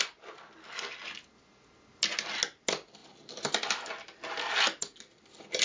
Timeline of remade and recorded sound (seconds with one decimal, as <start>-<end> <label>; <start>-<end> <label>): 0.0-5.6 recorded